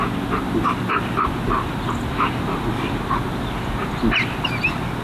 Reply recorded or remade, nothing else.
recorded